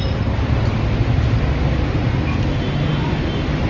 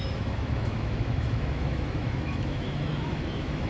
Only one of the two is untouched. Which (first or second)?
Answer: first